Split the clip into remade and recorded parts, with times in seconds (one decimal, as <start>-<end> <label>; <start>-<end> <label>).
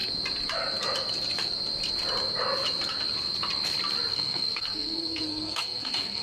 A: 0.0-4.1 recorded; 4.1-6.2 remade